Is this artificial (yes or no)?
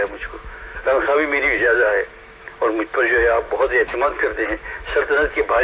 yes